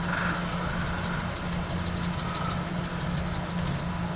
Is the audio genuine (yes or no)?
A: yes